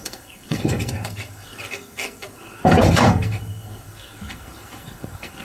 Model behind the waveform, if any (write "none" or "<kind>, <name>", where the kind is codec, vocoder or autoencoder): codec, SNAC